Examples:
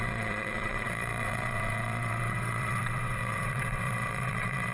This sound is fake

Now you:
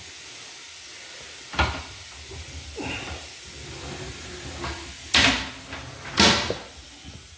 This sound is real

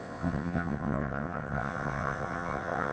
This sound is fake